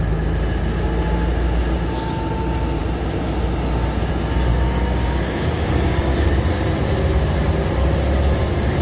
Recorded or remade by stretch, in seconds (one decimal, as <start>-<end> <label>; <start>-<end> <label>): 0.0-4.5 recorded; 4.5-6.0 remade; 6.0-8.8 recorded